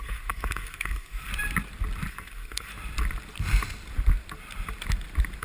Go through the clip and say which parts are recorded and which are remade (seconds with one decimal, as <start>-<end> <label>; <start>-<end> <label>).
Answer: 0.0-1.3 remade; 1.3-2.1 recorded; 2.1-2.7 remade; 2.7-5.4 recorded